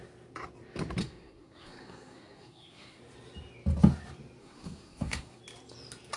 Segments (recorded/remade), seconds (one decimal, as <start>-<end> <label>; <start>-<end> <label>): 0.0-1.0 recorded; 1.0-3.0 remade; 3.0-4.4 recorded; 4.4-5.4 remade; 5.4-6.2 recorded